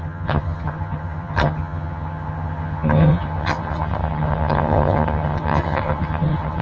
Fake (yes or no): yes